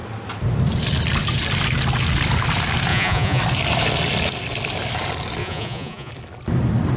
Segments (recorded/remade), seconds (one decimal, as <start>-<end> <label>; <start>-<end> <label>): 0.0-2.9 recorded; 2.9-3.4 remade; 3.4-5.4 recorded; 5.4-6.1 remade; 6.1-7.0 recorded